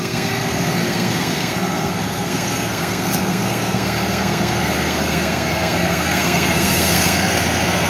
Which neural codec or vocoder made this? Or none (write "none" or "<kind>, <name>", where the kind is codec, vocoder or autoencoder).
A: codec, SNAC